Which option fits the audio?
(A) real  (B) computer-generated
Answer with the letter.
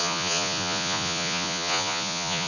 B